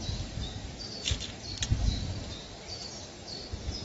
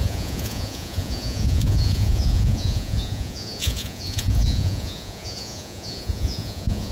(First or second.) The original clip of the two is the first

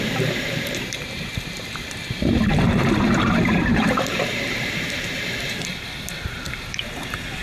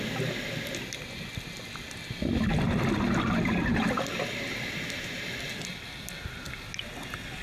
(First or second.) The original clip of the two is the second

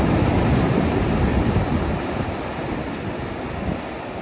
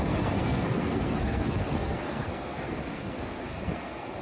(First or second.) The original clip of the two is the first